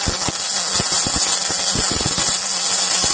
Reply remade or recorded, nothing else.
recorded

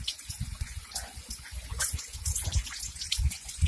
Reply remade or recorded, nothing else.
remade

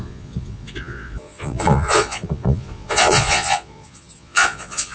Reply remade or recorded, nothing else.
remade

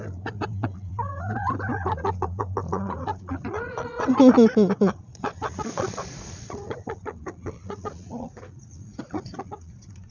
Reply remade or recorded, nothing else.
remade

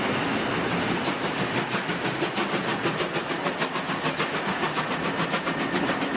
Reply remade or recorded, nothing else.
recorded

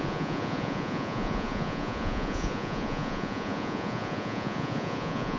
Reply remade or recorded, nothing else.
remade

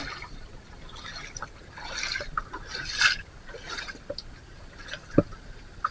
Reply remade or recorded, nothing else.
recorded